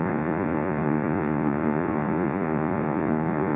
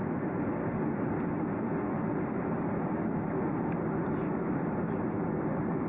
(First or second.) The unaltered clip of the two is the second